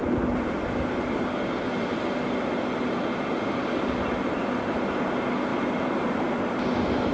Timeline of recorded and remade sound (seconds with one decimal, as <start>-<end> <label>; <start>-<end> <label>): 0.0-5.5 recorded; 5.5-6.5 remade; 6.5-7.1 recorded